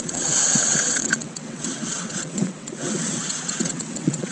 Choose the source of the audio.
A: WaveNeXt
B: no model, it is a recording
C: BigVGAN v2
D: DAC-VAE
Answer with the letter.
A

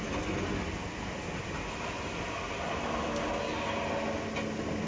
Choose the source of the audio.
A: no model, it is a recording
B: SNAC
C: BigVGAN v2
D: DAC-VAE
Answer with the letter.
A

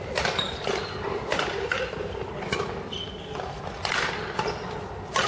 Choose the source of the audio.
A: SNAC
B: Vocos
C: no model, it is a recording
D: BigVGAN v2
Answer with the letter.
C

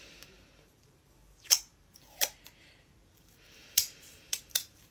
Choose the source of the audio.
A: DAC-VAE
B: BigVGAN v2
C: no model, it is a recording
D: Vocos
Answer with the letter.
B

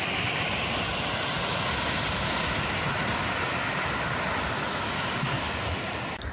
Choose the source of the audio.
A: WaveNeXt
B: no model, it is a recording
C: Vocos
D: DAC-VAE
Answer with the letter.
B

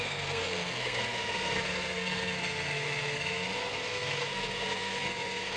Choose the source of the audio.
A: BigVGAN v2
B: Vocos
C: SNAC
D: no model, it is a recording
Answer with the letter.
C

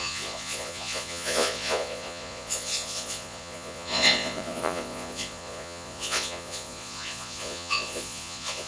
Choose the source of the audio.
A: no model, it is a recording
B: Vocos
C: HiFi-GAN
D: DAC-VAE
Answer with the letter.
B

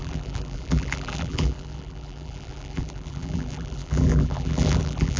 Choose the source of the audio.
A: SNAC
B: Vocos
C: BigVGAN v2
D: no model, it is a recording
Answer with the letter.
C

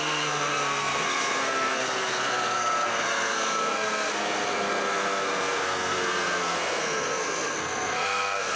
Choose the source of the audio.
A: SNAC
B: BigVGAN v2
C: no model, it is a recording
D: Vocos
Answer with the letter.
A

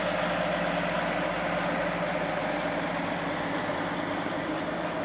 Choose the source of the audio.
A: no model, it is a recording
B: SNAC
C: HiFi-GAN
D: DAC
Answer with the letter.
A